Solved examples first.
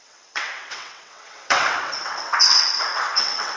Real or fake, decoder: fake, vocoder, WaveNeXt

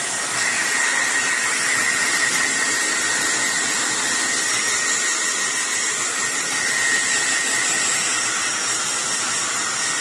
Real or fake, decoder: real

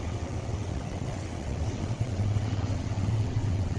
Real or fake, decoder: fake, vocoder, WaveNeXt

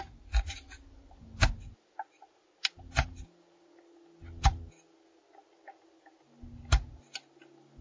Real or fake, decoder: real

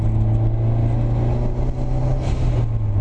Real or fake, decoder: real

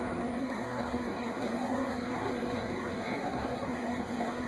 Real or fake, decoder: fake, codec, SNAC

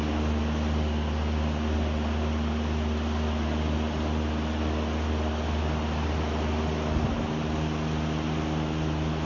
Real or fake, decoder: real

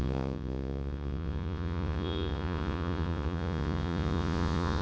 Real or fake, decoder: fake, vocoder, Vocos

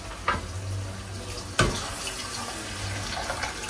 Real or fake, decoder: real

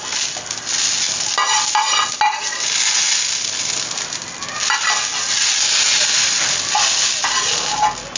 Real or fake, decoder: real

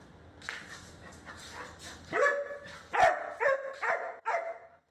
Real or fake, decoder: real